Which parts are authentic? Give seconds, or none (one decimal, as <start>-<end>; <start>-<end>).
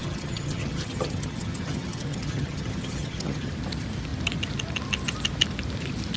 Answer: 3.5-6.2